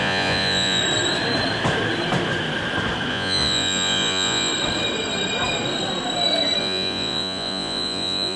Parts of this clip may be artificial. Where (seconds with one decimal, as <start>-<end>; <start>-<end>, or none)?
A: 0.0-0.8; 3.1-4.5; 6.6-8.4